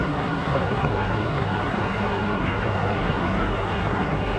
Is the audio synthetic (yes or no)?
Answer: yes